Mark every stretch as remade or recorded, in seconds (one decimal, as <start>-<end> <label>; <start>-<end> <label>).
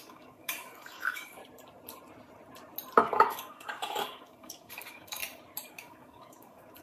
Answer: 0.0-1.4 remade; 1.4-3.0 recorded; 3.0-5.2 remade; 5.2-5.7 recorded; 5.7-6.8 remade